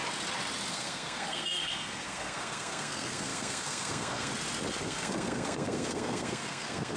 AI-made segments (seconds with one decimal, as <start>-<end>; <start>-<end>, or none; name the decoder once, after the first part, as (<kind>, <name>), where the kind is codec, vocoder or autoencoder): 0.7-4.3 (codec, SNAC); 4.8-7.0